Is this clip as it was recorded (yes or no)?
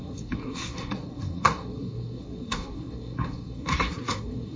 no